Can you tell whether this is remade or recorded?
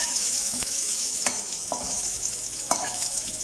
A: remade